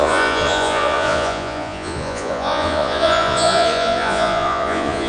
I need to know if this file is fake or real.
fake